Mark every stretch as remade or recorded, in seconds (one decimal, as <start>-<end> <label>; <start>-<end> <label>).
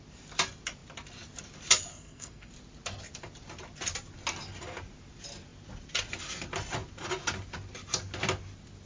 0.0-1.9 recorded; 1.9-2.5 remade; 2.5-8.9 recorded